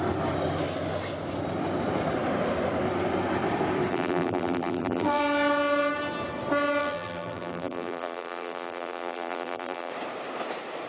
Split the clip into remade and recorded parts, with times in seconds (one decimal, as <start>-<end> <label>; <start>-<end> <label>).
0.0-3.9 recorded; 3.9-5.2 remade; 5.2-6.8 recorded; 6.8-9.9 remade; 9.9-10.9 recorded